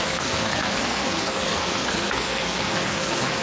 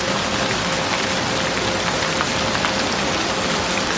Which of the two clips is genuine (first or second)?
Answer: second